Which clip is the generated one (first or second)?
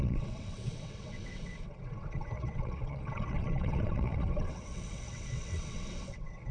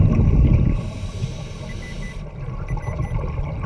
first